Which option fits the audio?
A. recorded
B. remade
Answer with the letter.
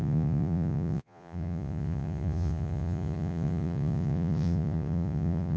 B